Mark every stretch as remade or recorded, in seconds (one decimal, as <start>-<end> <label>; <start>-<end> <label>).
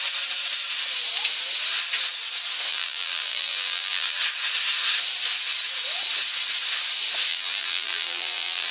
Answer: 0.0-2.7 recorded; 2.7-4.2 remade; 4.2-7.3 recorded; 7.3-8.7 remade